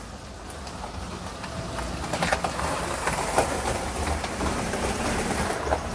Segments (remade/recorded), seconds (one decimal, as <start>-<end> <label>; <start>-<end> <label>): 0.0-3.4 recorded; 3.4-5.9 remade